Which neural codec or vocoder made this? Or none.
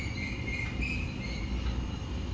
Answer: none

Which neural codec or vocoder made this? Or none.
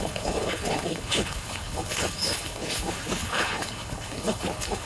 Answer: codec, HILCodec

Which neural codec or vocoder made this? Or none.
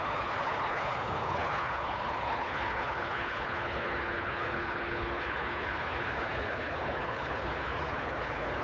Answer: codec, HILCodec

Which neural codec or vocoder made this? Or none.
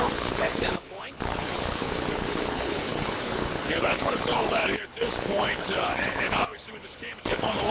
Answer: codec, HILCodec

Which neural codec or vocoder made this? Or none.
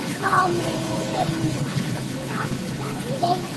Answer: codec, HILCodec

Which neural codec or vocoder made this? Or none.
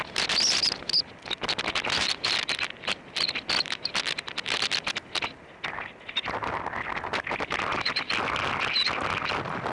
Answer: none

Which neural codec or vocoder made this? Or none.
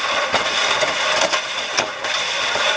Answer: none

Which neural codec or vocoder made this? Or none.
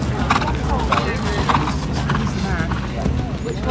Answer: none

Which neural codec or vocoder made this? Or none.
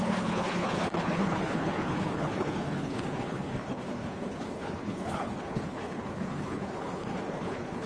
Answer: codec, HILCodec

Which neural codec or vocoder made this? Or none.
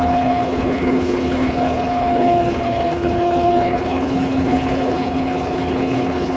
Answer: codec, HILCodec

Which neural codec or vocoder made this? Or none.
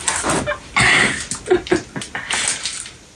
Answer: none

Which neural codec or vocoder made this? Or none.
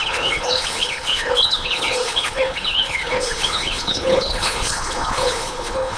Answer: codec, HILCodec